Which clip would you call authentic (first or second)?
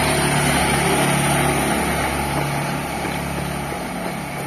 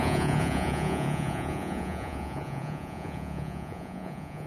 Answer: first